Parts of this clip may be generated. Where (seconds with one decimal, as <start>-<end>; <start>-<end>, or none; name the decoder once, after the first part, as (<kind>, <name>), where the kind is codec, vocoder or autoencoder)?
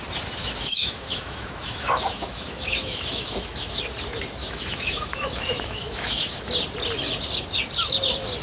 0.4-3.8 (autoencoder, DAC-VAE); 4.4-6.4